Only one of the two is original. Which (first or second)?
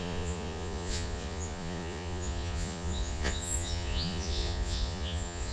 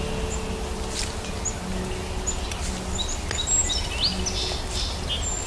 second